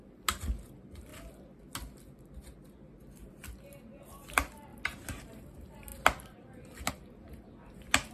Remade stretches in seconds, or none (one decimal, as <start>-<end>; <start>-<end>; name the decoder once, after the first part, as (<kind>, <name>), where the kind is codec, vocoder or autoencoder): none

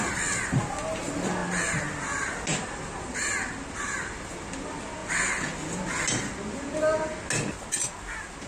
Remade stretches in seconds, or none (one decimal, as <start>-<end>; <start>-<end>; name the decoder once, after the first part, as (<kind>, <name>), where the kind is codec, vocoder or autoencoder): 2.5-3.3 (vocoder, BigVGAN v2)

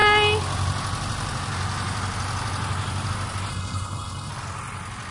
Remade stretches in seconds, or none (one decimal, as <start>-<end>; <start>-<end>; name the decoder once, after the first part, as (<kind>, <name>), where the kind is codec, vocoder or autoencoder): 3.5-4.3 (codec, HILCodec)

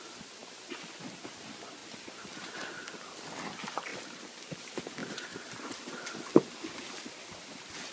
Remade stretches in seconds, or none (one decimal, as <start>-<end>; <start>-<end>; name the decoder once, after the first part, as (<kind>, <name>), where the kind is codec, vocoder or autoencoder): 3.9-4.6 (vocoder, BigVGAN v2)

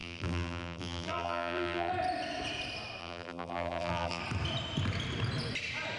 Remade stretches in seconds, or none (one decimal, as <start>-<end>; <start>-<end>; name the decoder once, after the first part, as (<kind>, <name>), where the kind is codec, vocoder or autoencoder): 0.0-1.9 (vocoder, BigVGAN v2); 3.0-4.2

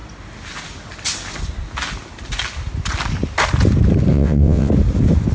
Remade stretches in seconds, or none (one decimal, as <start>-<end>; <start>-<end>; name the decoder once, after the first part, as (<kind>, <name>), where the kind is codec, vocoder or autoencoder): 4.1-4.7 (vocoder, WaveNeXt)

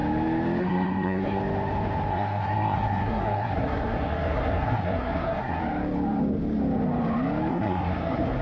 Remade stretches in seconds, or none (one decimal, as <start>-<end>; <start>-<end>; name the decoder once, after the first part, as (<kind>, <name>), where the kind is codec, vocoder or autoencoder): 0.6-1.4 (codec, SNAC); 2.1-5.6; 7.5-8.4

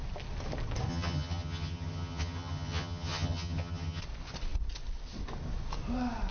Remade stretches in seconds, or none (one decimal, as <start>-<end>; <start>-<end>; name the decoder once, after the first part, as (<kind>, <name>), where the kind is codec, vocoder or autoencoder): 0.9-4.0 (vocoder, HiFi-GAN)